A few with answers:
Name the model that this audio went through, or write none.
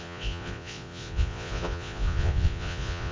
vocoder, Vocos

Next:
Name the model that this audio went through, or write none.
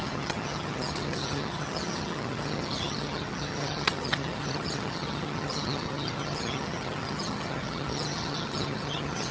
vocoder, HiFi-GAN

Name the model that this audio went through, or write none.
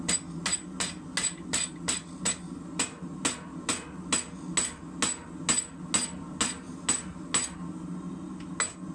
none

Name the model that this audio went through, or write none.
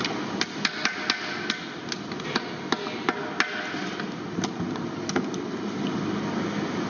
none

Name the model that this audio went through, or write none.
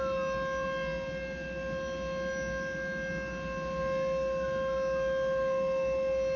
none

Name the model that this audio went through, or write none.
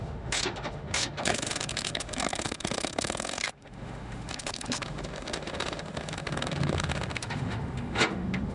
autoencoder, DAC-VAE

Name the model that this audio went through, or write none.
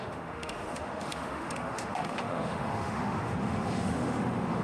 autoencoder, DAC-VAE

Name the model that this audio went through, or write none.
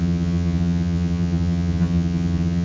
vocoder, HiFi-GAN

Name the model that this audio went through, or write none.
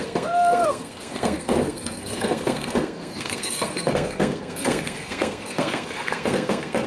codec, SNAC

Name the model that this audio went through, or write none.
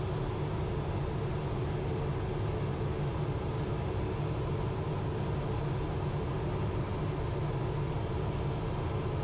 none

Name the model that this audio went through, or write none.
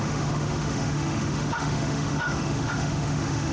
autoencoder, DAC-VAE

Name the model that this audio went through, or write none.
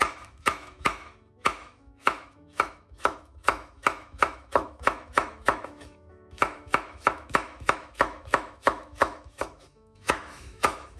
autoencoder, DAC-VAE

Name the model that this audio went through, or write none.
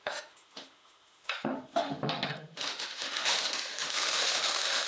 autoencoder, DAC-VAE